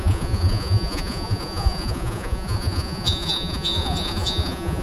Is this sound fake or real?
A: fake